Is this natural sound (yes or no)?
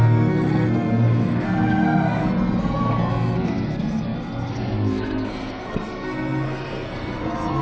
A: no